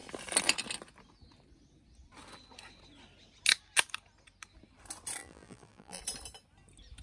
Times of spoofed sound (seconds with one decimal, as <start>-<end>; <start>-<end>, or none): 5.2-6.0

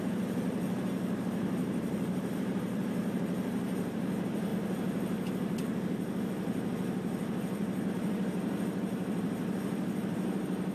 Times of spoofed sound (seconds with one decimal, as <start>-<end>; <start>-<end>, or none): 0.0-4.5; 7.9-10.7